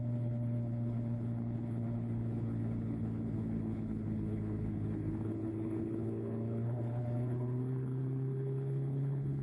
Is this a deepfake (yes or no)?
yes